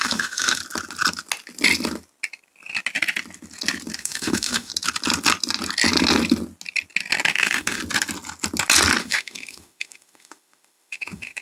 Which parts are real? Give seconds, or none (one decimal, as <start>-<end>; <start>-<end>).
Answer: 0.6-4.0; 4.7-7.3; 7.8-9.0